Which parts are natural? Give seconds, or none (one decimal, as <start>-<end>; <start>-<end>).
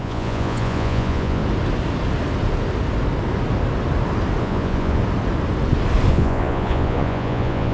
1.4-4.4; 5.0-6.1